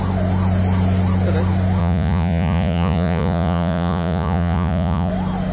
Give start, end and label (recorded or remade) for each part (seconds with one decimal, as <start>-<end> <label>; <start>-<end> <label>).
0.0-1.8 recorded; 1.8-5.1 remade; 5.1-5.5 recorded